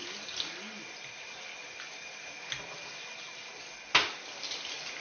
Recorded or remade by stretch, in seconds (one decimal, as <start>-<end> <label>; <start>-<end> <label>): 0.0-5.0 recorded